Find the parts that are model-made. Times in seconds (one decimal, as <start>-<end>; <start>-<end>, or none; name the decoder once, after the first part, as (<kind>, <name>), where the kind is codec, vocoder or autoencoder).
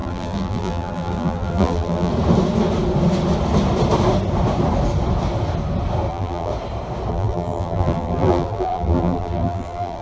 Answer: 0.0-2.1 (vocoder, BigVGAN v2); 6.1-6.5; 7.1-10.0